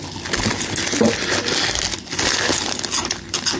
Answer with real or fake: real